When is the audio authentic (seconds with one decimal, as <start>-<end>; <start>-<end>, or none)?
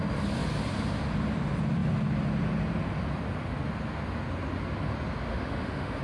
0.0-5.3